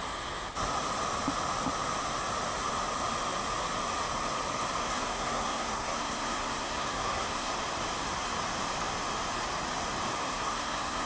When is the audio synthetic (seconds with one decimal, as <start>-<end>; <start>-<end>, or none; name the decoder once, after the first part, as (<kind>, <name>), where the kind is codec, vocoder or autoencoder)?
4.8-7.5 (codec, SNAC); 10.2-11.1